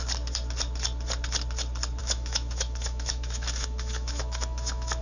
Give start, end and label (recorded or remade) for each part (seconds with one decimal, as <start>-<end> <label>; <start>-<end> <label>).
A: 0.0-2.0 recorded; 2.0-5.0 remade

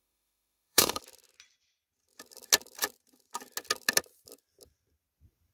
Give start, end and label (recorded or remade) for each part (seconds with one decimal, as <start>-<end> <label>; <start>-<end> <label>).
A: 0.0-1.0 remade; 1.0-5.5 recorded